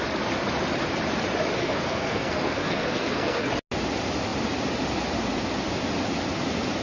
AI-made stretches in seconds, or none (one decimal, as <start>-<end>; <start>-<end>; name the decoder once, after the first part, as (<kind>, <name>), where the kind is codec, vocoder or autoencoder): 1.6-3.5 (codec, SNAC)